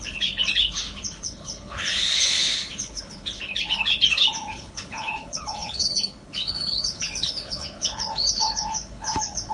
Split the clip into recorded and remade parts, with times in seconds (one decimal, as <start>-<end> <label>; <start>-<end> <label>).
0.0-9.5 remade

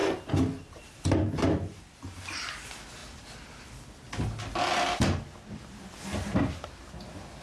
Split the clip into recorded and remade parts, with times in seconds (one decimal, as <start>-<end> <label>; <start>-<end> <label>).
0.0-7.4 recorded

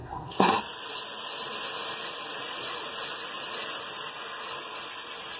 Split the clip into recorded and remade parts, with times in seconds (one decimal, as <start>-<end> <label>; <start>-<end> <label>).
0.0-0.5 remade; 0.5-5.4 recorded

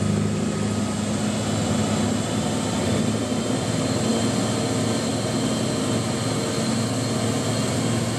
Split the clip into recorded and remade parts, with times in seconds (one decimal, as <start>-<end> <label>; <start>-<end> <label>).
0.0-8.2 recorded

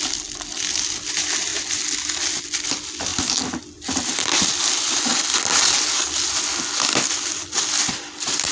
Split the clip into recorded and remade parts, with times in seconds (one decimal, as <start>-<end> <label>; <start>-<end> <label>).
0.0-8.5 recorded

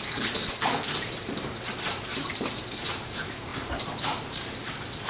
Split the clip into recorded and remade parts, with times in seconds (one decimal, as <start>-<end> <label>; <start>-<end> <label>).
0.0-0.4 remade; 0.4-0.9 recorded; 0.9-5.1 remade